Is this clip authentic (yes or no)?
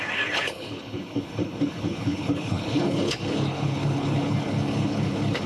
no